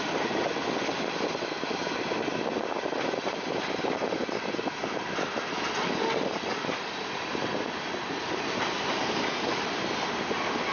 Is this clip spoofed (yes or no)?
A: no